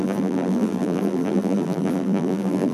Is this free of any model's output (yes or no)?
no